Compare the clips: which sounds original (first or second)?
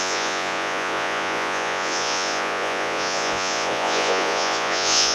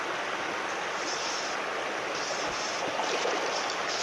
second